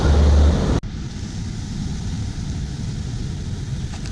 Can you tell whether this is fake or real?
real